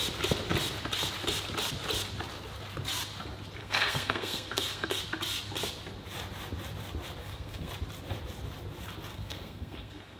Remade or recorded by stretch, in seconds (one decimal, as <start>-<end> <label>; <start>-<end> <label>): 0.0-3.6 recorded; 3.6-5.0 remade; 5.0-7.2 recorded; 7.2-7.7 remade; 7.7-9.1 recorded; 9.1-10.2 remade